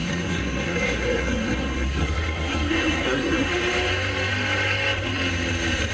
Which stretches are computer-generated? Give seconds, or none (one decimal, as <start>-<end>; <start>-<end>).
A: 0.0-3.5